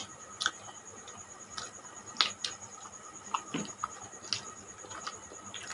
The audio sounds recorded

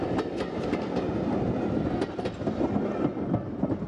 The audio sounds recorded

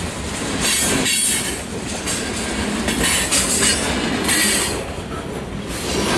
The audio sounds recorded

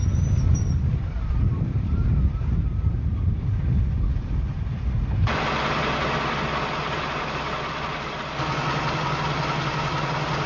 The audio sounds recorded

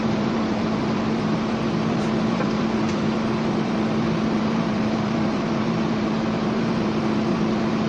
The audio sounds remade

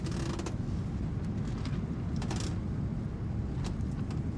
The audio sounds recorded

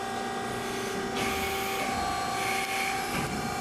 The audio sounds recorded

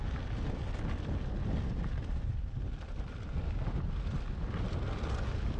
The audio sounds recorded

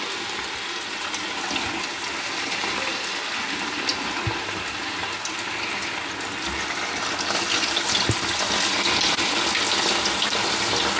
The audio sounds recorded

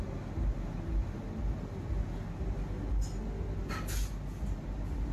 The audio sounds recorded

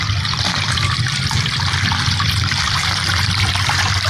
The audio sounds remade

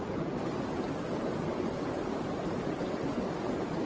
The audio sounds recorded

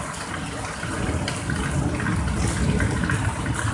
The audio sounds recorded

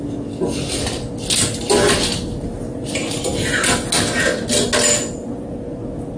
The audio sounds recorded